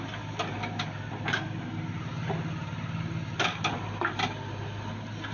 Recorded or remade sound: recorded